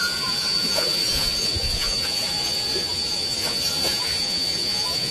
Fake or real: fake